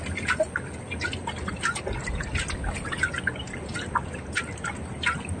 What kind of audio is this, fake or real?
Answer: real